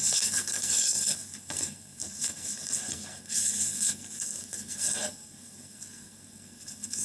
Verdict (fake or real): fake